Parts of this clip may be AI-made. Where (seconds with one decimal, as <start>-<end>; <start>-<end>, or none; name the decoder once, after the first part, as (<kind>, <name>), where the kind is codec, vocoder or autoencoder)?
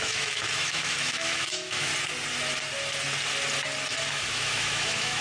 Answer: 0.0-1.9 (autoencoder, DAC-VAE); 4.1-5.2